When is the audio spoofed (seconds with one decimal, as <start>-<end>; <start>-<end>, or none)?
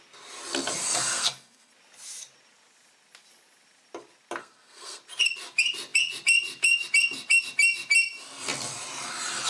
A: 0.8-1.7; 4.4-5.0